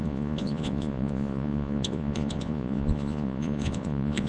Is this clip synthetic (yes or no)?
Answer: yes